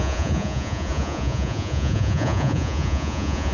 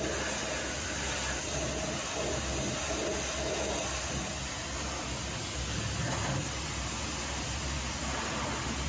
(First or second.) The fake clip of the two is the first